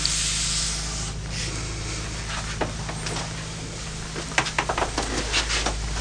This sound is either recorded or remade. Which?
recorded